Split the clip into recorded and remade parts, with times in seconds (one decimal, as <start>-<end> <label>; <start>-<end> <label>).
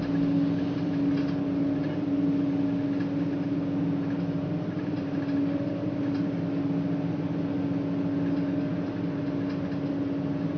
0.0-10.6 recorded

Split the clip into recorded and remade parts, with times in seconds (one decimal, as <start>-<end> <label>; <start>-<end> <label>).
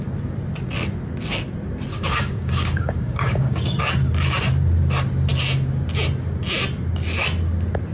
0.0-1.9 recorded; 1.9-3.8 remade; 3.8-7.9 recorded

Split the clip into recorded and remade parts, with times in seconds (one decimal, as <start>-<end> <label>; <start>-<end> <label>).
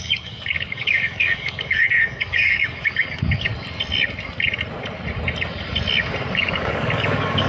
0.0-3.5 remade; 3.5-6.3 recorded; 6.3-7.5 remade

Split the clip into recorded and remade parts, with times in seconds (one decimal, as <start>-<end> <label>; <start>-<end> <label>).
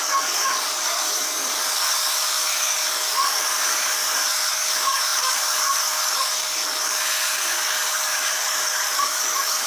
0.0-4.0 remade; 4.0-4.5 recorded; 4.5-9.7 remade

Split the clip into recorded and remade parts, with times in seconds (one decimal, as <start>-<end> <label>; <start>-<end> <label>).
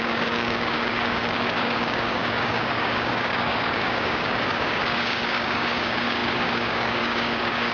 0.0-7.7 remade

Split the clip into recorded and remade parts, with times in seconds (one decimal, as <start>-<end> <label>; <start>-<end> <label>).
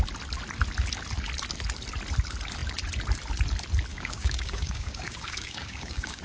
0.0-3.9 recorded; 3.9-6.2 remade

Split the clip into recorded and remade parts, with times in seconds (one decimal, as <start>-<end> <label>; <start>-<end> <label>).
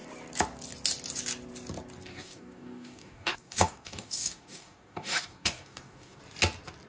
0.0-2.1 recorded; 2.1-6.2 remade; 6.2-6.9 recorded